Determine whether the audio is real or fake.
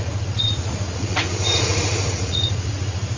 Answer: fake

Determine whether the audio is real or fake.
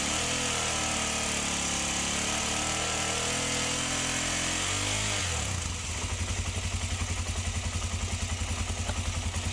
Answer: real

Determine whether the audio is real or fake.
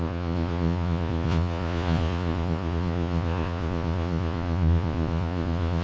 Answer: fake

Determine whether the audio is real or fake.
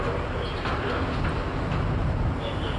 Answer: real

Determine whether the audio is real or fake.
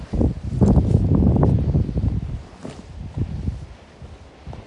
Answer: real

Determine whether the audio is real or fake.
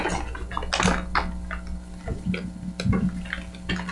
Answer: real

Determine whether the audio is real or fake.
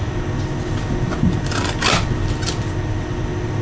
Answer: real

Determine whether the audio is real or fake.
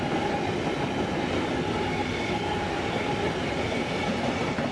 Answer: real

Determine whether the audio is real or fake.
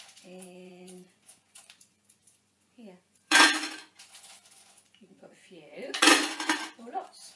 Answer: fake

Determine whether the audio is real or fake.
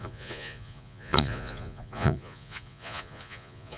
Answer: fake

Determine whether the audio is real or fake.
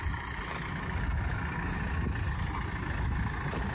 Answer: real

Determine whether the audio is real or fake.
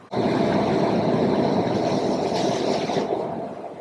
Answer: real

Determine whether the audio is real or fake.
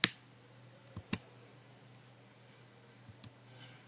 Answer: real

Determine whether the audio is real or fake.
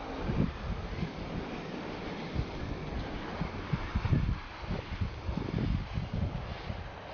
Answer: real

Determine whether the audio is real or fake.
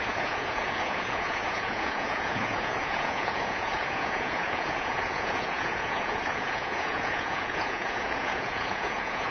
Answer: fake